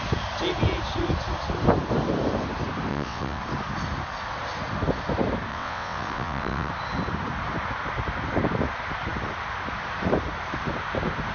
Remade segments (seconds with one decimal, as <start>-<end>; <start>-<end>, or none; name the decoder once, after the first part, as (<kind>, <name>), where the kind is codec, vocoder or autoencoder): 2.9-3.4 (vocoder, WaveNeXt); 5.5-6.7